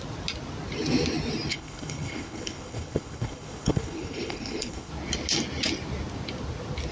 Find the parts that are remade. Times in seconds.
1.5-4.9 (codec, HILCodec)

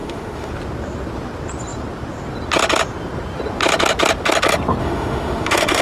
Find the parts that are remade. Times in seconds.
0.0-0.5 (autoencoder, DAC-VAE); 4.8-5.8

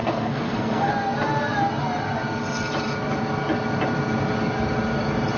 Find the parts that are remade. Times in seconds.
0.0-0.9 (codec, SNAC)

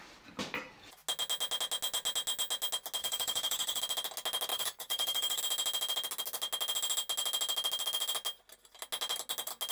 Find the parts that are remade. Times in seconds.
3.0-3.8 (codec, DAC); 4.5-5.4

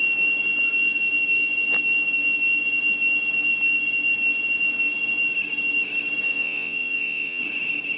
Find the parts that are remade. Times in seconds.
6.3-7.4 (vocoder, Vocos)

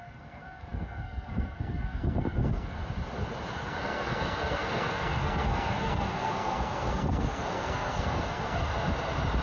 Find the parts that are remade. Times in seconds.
0.0-2.8 (codec, SNAC); 3.5-8.7

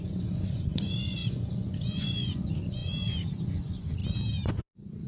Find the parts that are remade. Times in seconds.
0.0-4.0 (vocoder, Vocos); 4.5-5.1

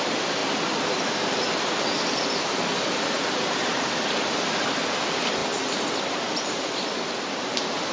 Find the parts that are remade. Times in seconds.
5.4-7.1 (vocoder, BigVGAN v2)